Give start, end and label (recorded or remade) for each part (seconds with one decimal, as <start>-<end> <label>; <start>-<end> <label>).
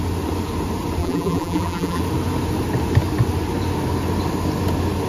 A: 0.0-1.0 recorded; 1.0-2.0 remade; 2.0-5.1 recorded